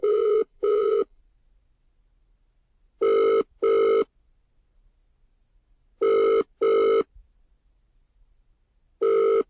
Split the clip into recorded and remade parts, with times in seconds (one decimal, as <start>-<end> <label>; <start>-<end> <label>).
0.0-1.2 remade; 1.2-9.5 recorded